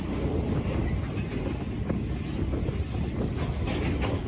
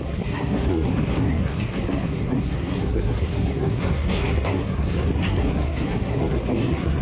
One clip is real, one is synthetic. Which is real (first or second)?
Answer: first